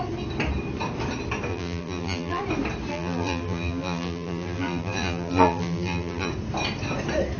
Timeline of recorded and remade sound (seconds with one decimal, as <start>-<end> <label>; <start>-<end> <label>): 0.0-1.5 recorded; 1.5-2.4 remade; 2.4-2.9 recorded; 2.9-6.3 remade; 6.3-7.4 recorded